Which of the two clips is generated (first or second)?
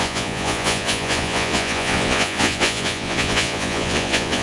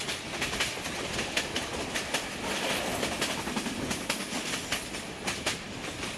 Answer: first